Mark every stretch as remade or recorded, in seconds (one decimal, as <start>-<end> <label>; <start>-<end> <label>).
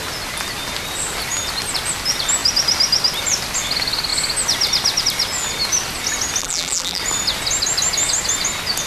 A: 0.0-6.4 recorded; 6.4-7.0 remade; 7.0-8.9 recorded